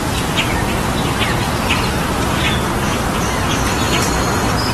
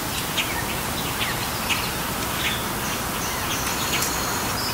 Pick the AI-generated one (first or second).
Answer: second